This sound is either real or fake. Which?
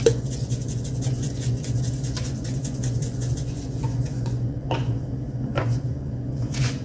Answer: fake